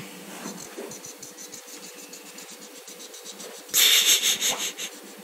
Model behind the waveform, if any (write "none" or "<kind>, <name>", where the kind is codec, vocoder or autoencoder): none